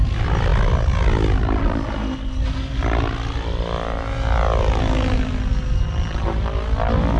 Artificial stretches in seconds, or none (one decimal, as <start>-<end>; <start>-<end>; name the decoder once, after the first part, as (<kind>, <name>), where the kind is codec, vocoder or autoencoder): none